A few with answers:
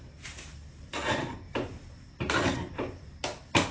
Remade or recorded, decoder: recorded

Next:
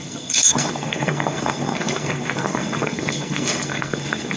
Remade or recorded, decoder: remade, codec, SNAC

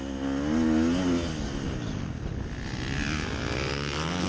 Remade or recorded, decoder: recorded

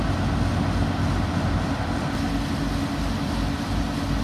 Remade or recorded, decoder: recorded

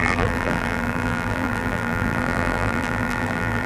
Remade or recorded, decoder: remade, vocoder, BigVGAN v2